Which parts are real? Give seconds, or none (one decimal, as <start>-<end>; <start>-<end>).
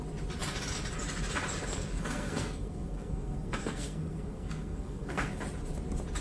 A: 0.0-1.7; 5.4-6.2